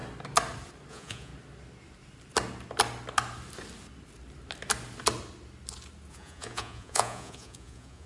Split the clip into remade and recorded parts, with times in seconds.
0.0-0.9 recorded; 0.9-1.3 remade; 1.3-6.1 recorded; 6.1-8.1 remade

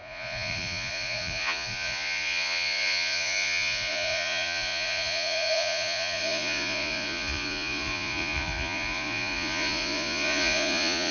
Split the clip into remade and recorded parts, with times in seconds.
0.0-11.1 remade